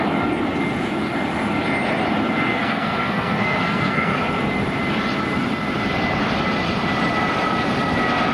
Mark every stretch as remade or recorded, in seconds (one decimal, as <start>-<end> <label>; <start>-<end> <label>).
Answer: 0.0-2.5 recorded; 2.5-4.2 remade; 4.2-8.3 recorded